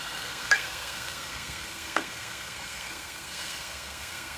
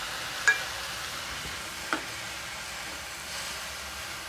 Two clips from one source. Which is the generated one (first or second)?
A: first